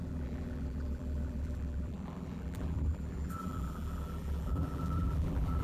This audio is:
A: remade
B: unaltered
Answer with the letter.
A